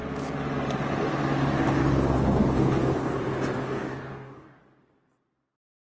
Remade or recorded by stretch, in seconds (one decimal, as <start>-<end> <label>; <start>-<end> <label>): 0.0-2.4 recorded; 2.4-3.2 remade; 3.2-3.6 recorded; 3.6-4.6 remade; 4.6-5.9 recorded